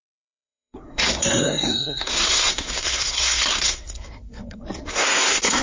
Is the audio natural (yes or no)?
no